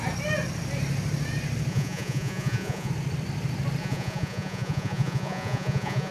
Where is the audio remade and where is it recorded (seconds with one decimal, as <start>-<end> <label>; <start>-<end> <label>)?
0.0-1.7 recorded; 1.7-2.9 remade; 2.9-3.8 recorded; 3.8-6.1 remade